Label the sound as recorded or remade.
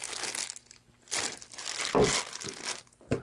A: recorded